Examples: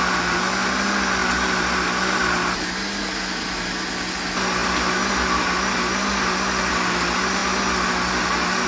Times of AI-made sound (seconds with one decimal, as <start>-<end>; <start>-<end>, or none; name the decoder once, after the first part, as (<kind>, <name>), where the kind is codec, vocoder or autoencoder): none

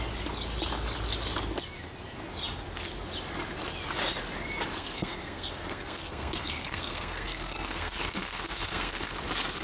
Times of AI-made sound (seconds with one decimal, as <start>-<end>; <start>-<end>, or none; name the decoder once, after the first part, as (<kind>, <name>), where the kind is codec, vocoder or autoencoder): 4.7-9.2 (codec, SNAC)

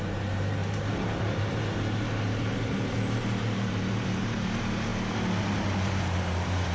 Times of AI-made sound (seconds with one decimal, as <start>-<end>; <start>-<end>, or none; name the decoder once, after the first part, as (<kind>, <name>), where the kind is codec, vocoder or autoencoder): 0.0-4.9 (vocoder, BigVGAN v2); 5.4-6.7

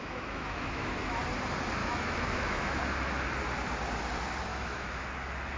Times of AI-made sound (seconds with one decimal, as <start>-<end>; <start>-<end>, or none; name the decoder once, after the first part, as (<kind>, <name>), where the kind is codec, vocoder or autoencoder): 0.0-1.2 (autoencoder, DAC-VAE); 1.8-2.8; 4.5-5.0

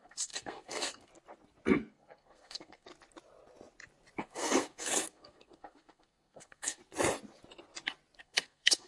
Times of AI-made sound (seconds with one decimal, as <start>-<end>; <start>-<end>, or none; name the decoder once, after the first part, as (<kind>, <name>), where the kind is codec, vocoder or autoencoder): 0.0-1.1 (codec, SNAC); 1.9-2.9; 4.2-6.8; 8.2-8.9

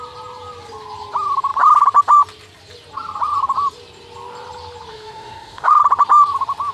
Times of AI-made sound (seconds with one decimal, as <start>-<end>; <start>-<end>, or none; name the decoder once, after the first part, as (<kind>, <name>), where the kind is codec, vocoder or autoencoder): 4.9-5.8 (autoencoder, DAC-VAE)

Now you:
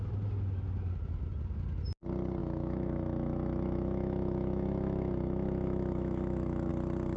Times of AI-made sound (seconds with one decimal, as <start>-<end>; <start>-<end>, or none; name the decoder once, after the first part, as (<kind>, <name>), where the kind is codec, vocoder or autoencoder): 2.4-6.7 (autoencoder, DAC-VAE)